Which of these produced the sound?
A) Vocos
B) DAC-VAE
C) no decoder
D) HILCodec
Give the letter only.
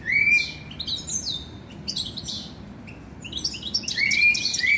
C